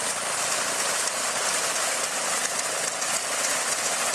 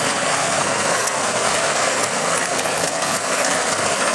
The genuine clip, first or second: first